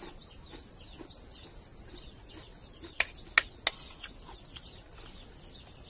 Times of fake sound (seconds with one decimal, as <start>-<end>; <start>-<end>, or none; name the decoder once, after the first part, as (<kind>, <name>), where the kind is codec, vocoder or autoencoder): 1.7-2.3 (vocoder, BigVGAN v2)